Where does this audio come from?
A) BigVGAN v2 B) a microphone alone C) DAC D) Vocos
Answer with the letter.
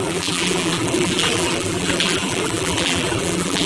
A